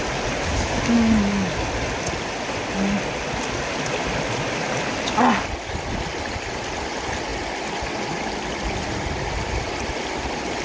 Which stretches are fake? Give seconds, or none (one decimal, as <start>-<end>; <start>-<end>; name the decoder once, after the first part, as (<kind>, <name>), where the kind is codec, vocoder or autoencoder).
none